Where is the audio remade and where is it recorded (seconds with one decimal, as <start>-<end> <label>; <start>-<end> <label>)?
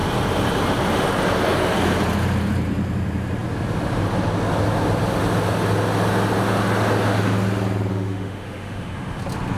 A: 0.0-7.9 recorded; 7.9-9.2 remade; 9.2-9.6 recorded